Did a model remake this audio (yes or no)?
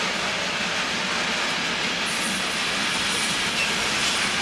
no